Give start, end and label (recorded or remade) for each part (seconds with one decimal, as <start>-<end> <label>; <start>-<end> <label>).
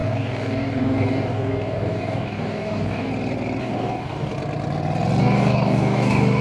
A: 0.0-3.1 remade; 3.1-3.6 recorded; 3.6-4.3 remade; 4.3-5.2 recorded; 5.2-6.4 remade